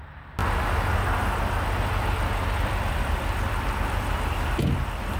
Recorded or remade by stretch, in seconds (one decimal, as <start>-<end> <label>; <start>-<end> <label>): 0.0-5.2 recorded